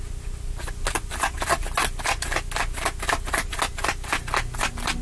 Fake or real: real